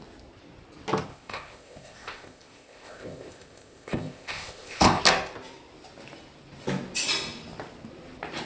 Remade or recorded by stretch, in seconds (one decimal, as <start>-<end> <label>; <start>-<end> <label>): 0.0-1.1 recorded; 1.1-5.0 remade; 5.0-8.5 recorded